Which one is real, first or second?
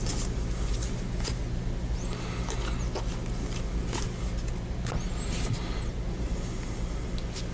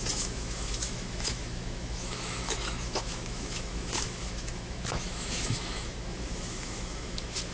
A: first